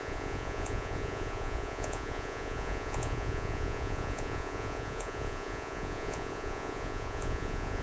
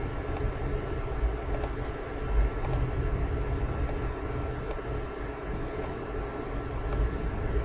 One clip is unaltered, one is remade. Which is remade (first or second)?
first